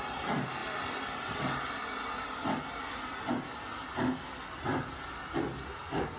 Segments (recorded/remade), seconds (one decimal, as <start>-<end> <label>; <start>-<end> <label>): 0.0-6.2 recorded